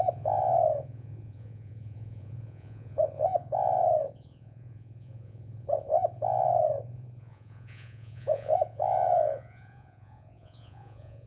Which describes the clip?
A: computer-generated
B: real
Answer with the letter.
A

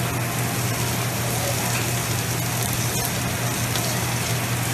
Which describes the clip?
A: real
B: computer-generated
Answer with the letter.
A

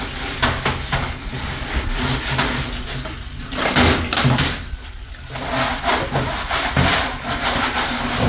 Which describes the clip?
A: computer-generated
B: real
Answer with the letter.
B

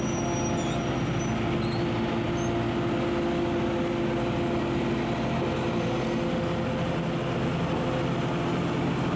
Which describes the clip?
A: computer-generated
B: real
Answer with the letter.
B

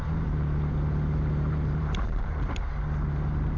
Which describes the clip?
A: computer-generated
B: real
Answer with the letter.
A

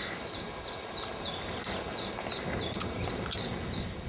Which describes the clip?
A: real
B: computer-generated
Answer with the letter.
A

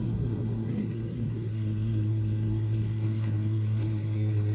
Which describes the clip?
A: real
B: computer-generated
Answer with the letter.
B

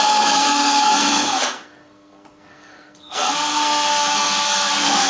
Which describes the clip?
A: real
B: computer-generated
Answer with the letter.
B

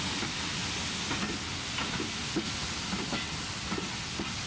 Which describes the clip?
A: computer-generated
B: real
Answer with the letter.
B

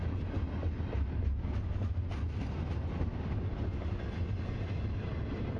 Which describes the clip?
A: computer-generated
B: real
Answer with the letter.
B